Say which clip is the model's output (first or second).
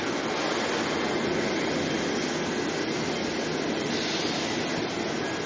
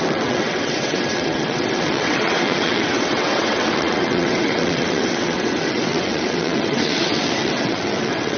second